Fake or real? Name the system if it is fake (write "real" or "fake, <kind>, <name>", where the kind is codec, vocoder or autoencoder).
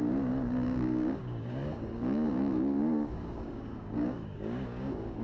fake, codec, DAC